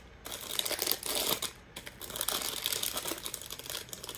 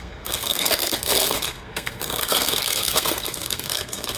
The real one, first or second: first